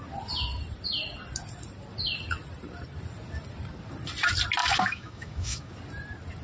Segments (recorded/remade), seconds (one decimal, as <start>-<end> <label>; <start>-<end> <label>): 0.0-4.6 recorded; 4.6-5.7 remade; 5.7-6.4 recorded